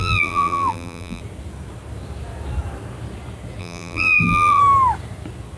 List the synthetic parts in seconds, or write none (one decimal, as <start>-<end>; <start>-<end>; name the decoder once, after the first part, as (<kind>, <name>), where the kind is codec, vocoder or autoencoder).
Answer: 0.0-1.2 (vocoder, BigVGAN v2); 3.6-4.6